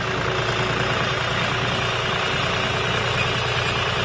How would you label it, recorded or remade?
recorded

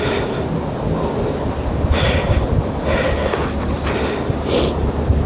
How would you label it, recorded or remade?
recorded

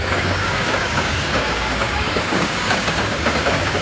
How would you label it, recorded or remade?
remade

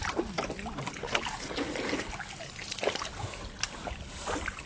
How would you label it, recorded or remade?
recorded